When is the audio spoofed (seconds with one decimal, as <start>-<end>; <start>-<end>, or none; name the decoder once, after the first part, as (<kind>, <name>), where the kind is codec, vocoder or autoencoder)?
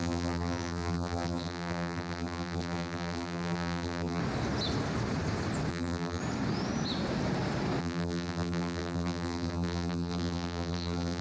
0.0-4.2 (vocoder, BigVGAN v2); 5.7-6.2; 7.8-11.2